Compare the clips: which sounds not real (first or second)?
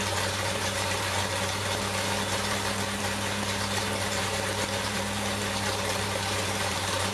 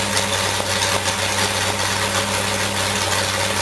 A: first